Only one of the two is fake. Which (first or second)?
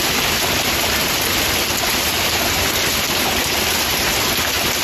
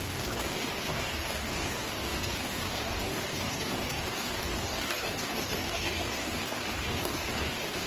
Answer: second